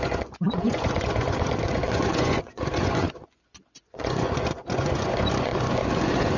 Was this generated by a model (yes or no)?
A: yes